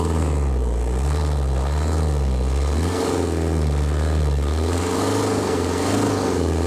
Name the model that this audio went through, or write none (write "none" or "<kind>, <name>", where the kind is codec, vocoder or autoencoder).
codec, SNAC